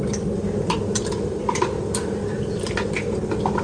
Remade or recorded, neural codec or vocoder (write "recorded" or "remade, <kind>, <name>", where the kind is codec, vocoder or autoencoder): recorded